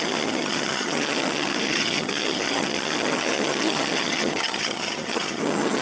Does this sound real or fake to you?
fake